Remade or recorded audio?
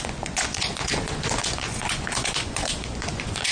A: remade